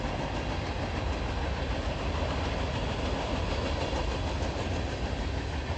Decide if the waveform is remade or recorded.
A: recorded